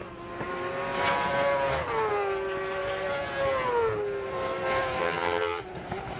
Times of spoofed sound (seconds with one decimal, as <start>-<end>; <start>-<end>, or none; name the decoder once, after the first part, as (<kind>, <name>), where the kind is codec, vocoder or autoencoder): 5.0-5.6 (vocoder, HiFi-GAN)